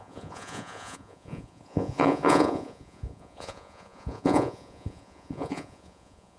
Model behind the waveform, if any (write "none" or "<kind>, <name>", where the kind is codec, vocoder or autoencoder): vocoder, Vocos